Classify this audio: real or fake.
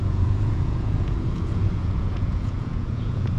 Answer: fake